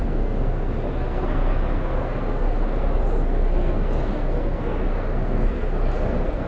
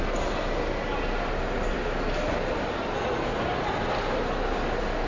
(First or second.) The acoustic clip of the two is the second